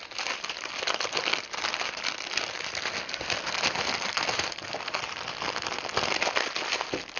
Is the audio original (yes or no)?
yes